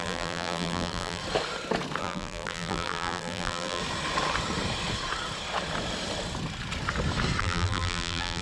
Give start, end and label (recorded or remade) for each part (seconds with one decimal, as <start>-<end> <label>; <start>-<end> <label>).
0.0-1.2 remade; 1.2-2.0 recorded; 2.0-3.8 remade; 3.8-7.4 recorded; 7.4-8.4 remade